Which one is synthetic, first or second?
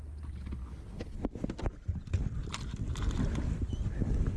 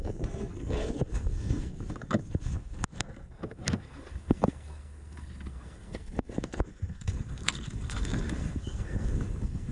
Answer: second